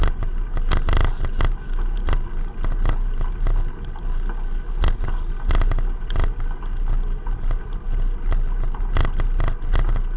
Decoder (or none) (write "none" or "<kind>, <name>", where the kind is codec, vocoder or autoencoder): none